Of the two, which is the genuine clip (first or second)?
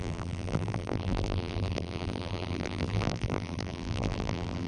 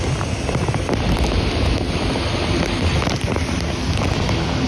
second